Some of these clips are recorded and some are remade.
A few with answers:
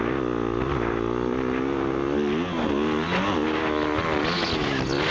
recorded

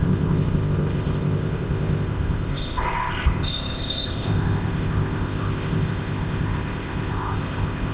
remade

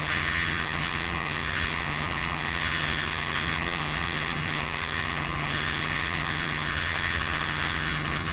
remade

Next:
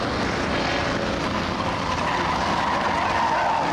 recorded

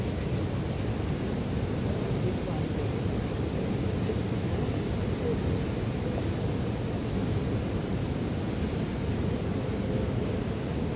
recorded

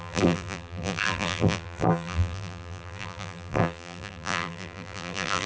remade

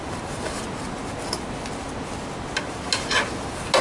recorded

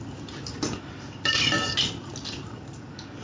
recorded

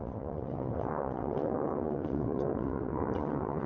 remade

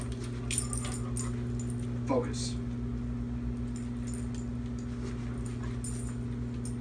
recorded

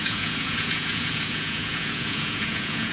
remade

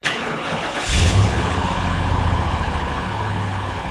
remade